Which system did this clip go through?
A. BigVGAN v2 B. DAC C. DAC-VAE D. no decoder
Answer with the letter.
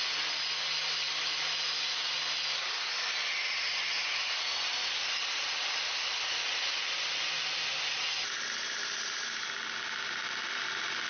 D